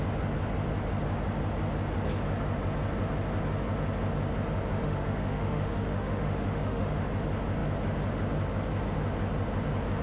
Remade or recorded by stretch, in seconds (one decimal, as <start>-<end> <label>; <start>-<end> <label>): 0.0-4.8 recorded; 4.8-7.0 remade; 7.0-10.0 recorded

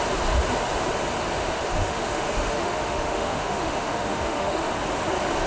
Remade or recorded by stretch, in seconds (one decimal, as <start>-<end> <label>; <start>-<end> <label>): 0.0-1.4 recorded; 1.4-4.7 remade; 4.7-5.5 recorded